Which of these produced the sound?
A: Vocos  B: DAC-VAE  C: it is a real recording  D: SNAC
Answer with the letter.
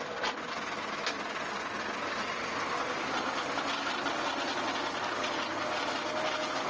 C